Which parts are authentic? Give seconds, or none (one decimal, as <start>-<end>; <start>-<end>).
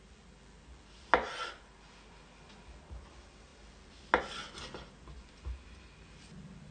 0.0-6.7